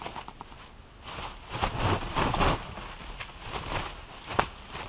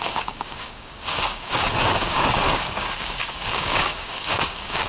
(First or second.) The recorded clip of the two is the first